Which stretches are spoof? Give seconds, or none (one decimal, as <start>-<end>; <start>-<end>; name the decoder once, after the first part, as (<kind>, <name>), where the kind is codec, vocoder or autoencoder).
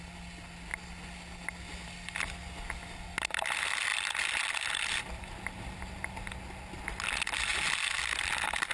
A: none